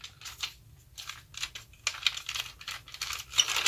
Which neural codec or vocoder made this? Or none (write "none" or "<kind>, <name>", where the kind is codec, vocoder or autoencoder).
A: none